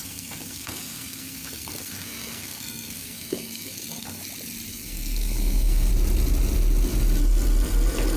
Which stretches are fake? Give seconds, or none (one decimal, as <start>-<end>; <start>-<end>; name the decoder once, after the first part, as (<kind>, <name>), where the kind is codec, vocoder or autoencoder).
0.0-4.2 (codec, SNAC); 4.7-5.9